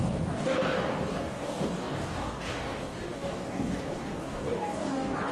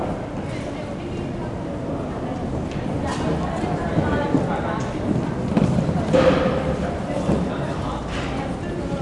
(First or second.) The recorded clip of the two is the second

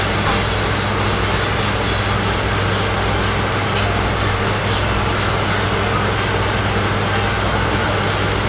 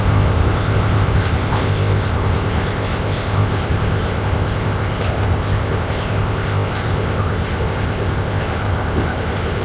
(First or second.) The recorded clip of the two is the first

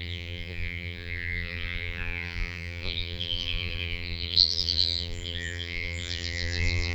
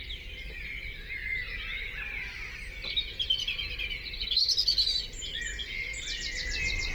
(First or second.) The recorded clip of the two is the second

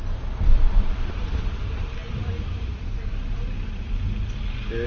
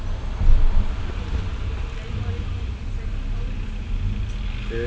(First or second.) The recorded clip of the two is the second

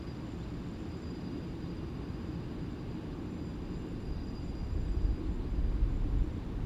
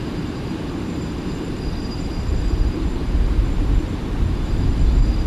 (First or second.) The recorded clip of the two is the first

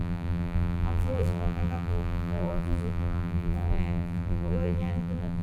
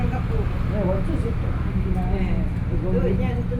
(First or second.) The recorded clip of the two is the second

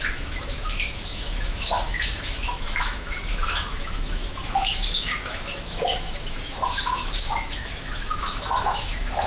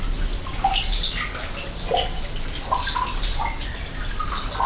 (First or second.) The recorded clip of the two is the second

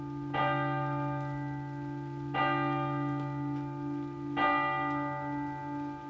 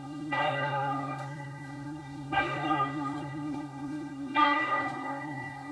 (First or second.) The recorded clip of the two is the first